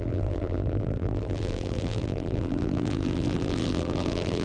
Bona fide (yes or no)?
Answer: no